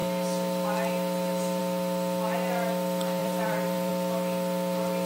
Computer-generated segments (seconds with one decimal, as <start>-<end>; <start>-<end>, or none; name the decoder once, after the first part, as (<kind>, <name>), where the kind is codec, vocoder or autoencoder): 3.2-3.9 (vocoder, BigVGAN v2)